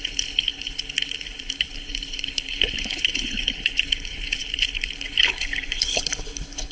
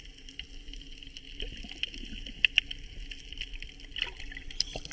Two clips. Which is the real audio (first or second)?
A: second